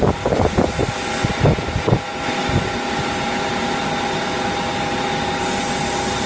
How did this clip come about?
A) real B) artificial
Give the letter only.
A